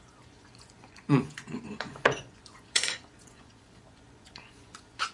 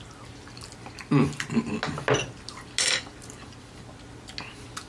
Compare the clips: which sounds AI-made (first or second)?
first